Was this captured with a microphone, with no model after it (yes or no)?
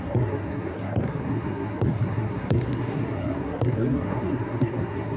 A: no